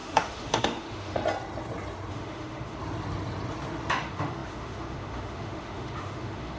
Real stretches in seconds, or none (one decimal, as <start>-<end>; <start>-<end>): 1.2-2.1; 2.8-3.9